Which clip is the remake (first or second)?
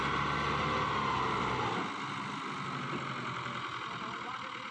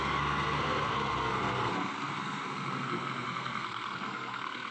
second